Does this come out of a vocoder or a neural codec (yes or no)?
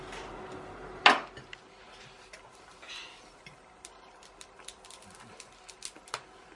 no